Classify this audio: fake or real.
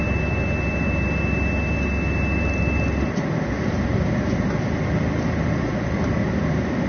real